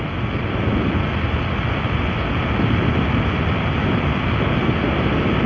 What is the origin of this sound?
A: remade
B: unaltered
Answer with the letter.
B